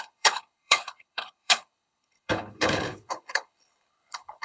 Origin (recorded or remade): remade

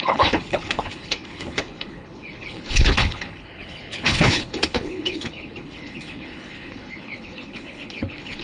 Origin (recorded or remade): remade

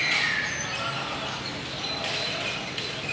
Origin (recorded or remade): recorded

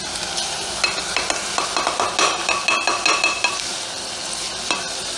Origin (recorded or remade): recorded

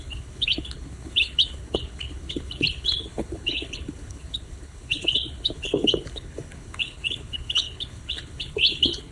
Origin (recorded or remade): remade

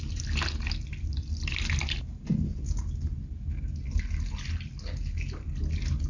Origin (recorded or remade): recorded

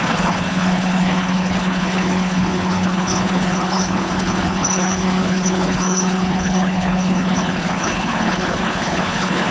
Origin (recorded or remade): remade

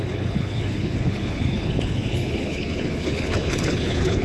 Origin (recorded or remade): remade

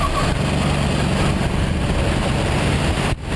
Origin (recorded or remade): recorded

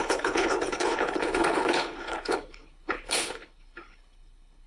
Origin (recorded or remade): remade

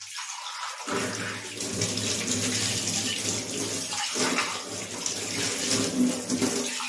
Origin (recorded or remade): recorded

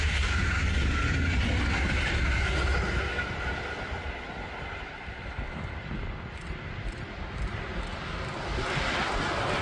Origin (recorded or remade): recorded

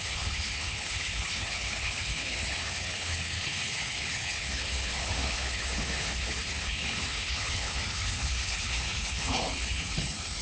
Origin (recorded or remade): remade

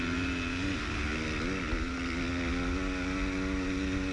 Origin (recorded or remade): recorded